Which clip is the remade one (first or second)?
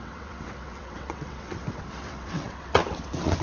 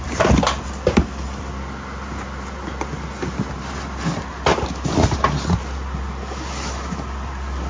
first